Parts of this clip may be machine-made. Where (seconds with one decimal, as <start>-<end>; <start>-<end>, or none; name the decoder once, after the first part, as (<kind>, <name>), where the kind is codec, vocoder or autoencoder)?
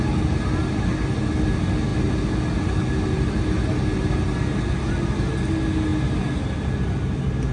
none